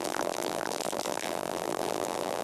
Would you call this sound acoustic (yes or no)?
no